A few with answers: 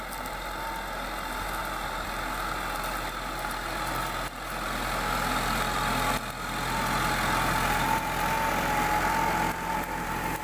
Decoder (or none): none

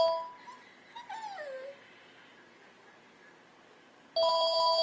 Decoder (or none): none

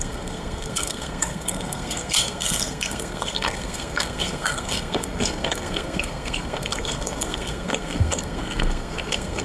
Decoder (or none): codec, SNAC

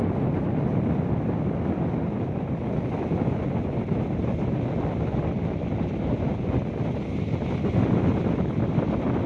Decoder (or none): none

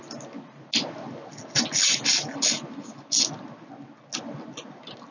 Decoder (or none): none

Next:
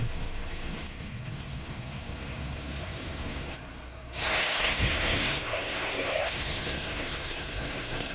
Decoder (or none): codec, SNAC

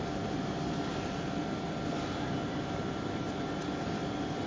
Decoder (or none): none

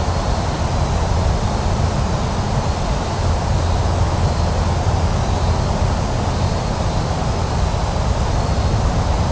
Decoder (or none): none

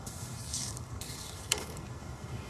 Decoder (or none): codec, SNAC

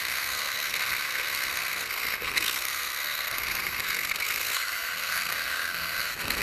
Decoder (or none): codec, SNAC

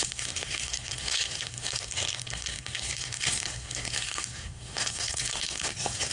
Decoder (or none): codec, SNAC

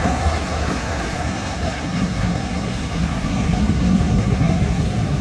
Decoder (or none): codec, SNAC